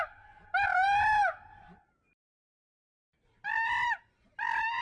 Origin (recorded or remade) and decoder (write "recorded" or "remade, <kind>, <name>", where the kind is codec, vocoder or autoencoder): recorded